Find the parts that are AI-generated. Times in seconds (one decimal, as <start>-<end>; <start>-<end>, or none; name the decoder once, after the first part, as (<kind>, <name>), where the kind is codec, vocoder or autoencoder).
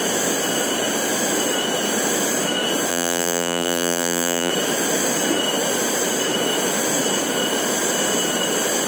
2.9-4.5 (vocoder, BigVGAN v2)